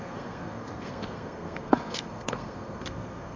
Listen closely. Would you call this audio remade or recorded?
remade